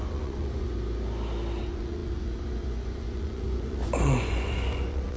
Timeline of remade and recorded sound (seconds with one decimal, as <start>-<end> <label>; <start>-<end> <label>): 0.0-0.7 remade; 0.7-1.6 recorded; 1.6-5.2 remade